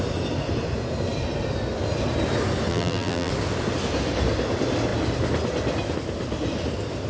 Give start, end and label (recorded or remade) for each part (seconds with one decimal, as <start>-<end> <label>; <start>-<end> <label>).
0.0-2.7 recorded; 2.7-3.3 remade; 3.3-7.1 recorded